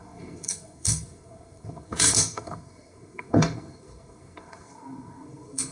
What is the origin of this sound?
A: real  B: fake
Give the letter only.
B